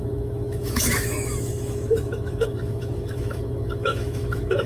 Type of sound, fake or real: fake